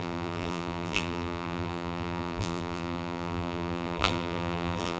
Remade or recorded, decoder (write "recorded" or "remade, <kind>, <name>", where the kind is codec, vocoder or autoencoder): remade, vocoder, BigVGAN v2